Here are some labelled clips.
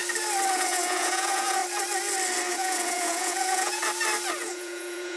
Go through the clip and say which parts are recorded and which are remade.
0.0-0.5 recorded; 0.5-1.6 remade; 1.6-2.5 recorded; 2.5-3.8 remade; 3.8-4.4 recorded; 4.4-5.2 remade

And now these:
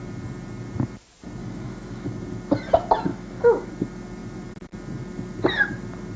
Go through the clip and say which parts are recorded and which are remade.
0.0-1.4 recorded; 1.4-2.1 remade; 2.1-3.1 recorded; 3.1-3.7 remade; 3.7-6.2 recorded

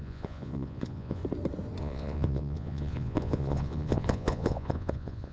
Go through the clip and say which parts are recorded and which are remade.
0.0-1.2 remade; 1.2-1.8 recorded; 1.8-5.3 remade